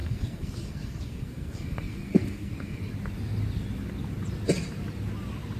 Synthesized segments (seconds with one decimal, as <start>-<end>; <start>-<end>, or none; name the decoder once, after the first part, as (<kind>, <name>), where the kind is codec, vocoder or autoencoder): 0.0-2.8 (codec, SNAC)